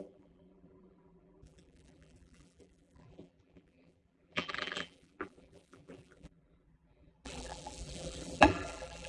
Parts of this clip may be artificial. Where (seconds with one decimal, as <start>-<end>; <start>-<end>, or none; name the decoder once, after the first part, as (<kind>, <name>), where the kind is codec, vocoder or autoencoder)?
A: 0.0-9.1 (vocoder, BigVGAN v2)